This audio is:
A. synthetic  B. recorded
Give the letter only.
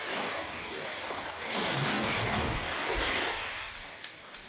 A